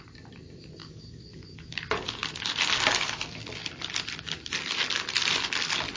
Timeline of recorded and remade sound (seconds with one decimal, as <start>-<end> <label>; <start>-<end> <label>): 0.0-0.8 recorded; 0.8-1.7 remade; 1.7-6.0 recorded